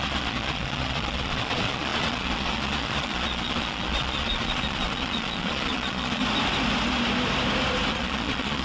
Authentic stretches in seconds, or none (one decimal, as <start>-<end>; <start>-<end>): 6.2-7.9